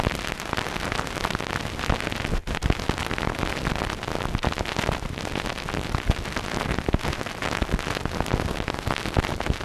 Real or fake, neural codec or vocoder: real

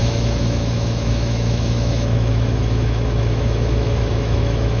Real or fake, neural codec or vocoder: fake, autoencoder, DAC-VAE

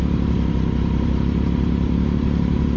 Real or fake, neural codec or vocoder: real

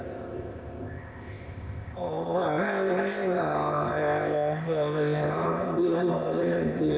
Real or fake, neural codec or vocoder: fake, codec, ZipCodec